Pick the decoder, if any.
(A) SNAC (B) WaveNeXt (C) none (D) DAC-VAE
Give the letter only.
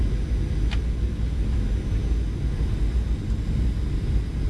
C